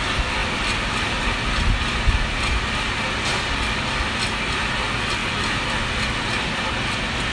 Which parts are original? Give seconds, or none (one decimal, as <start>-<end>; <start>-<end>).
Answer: 0.0-7.3